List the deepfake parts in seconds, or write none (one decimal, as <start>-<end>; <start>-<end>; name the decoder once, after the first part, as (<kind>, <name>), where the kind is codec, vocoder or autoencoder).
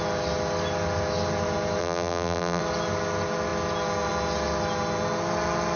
1.8-2.6 (vocoder, BigVGAN v2)